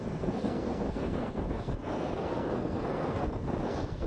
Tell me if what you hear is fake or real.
fake